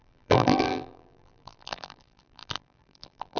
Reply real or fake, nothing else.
fake